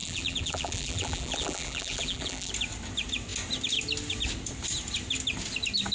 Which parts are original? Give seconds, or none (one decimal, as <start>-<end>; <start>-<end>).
2.5-5.9